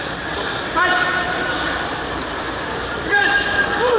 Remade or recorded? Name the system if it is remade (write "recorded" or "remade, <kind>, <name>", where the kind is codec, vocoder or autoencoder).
remade, vocoder, BigVGAN v2